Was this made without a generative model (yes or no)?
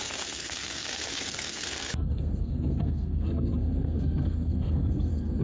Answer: no